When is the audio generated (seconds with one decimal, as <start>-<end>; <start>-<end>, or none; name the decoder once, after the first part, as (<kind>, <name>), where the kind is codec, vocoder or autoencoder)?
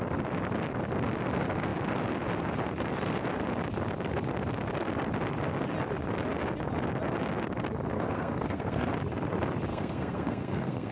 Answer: 7.9-8.9 (codec, SNAC); 9.7-10.9